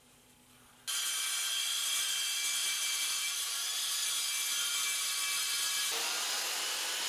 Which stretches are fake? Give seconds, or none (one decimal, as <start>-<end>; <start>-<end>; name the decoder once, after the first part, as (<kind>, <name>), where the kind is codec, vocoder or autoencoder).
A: 2.6-4.1 (vocoder, BigVGAN v2)